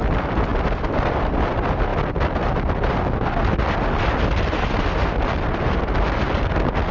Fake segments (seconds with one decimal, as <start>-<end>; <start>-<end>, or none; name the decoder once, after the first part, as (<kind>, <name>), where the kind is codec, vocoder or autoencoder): 0.5-1.5 (vocoder, BigVGAN v2)